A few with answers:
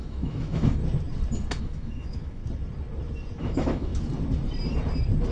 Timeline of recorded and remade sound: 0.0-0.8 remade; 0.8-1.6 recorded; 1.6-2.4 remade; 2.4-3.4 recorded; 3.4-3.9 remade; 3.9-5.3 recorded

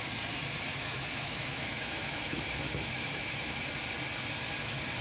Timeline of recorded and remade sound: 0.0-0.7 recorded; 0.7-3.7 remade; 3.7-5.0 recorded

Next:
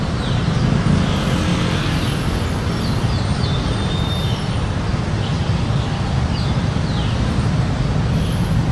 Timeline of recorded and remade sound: 0.0-8.7 recorded